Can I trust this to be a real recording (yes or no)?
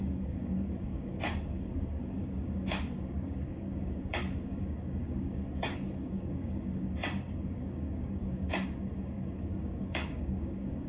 no